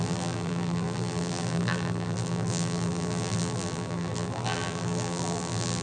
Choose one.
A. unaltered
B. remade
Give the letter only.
B